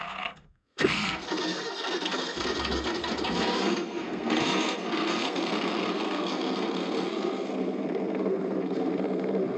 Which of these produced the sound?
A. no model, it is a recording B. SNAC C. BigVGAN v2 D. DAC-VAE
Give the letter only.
B